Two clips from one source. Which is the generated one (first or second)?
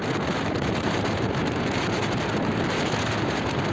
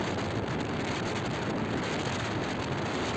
first